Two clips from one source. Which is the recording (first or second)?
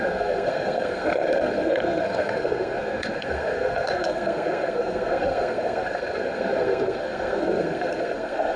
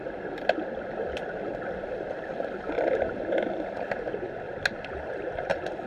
second